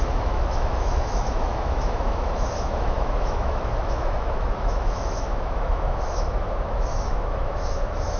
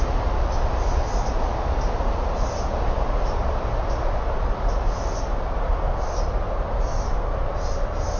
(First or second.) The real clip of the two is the second